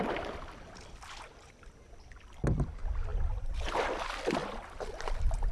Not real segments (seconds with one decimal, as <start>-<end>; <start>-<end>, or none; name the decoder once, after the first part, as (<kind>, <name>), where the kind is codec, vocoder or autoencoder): 3.1-3.9 (vocoder, BigVGAN v2); 4.4-5.1